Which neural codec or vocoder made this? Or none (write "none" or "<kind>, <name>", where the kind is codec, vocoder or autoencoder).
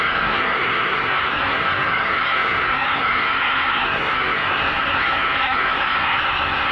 codec, SNAC